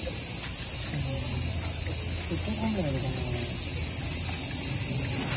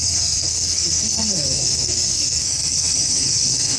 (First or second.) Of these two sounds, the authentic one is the first